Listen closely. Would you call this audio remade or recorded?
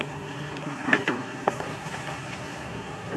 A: remade